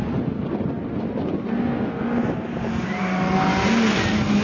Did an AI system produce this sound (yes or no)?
no